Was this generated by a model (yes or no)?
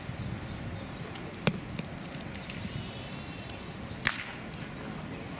no